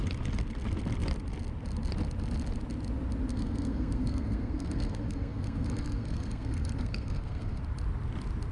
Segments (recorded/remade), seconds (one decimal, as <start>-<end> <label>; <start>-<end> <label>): 0.0-3.3 recorded; 3.3-7.6 remade; 7.6-8.5 recorded